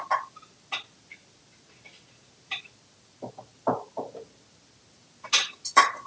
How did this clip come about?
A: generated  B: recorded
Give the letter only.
B